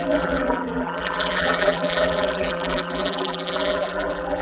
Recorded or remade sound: remade